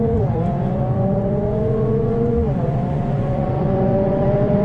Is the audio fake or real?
fake